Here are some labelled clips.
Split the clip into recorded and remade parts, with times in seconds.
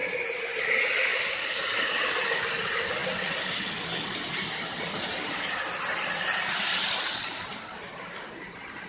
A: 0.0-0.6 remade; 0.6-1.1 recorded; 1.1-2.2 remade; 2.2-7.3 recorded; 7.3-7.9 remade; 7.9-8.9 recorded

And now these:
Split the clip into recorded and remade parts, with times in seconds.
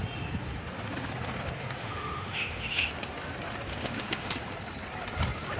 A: 0.0-1.8 recorded; 1.8-2.9 remade; 2.9-3.7 recorded; 3.7-4.3 remade; 4.3-5.6 recorded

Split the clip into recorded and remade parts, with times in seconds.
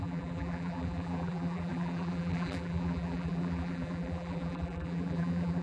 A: 0.0-5.6 remade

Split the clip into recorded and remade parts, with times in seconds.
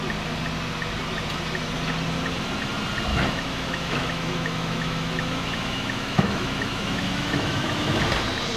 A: 0.0-3.1 recorded; 3.1-8.0 remade; 8.0-8.6 recorded